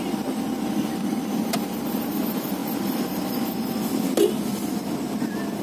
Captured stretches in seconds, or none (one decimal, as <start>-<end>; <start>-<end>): 0.0-5.6